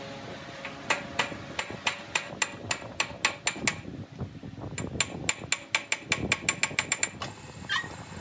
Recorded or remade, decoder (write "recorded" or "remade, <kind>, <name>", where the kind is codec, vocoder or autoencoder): recorded